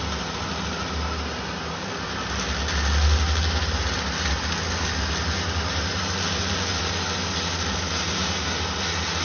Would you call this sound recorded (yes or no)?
yes